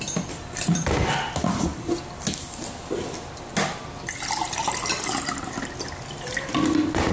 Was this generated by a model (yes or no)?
no